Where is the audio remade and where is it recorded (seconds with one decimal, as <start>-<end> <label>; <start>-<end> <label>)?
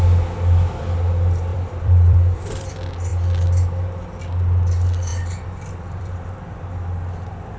0.0-1.5 recorded; 1.5-2.7 remade; 2.7-5.1 recorded; 5.1-6.7 remade; 6.7-7.6 recorded